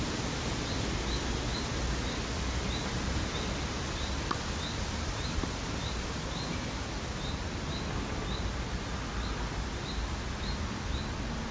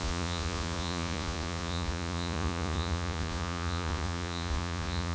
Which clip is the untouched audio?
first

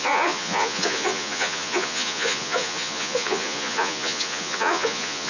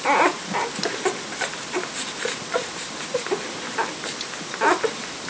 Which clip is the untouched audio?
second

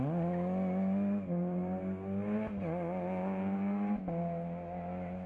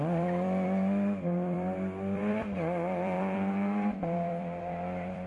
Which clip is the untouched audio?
first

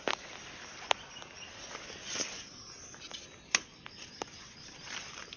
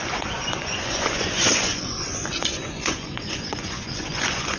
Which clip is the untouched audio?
first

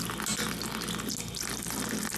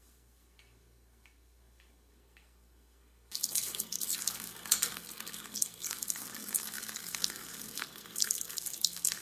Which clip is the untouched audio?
first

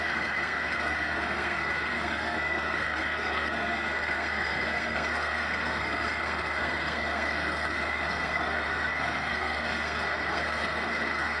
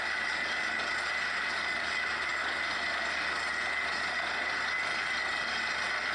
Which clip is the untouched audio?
second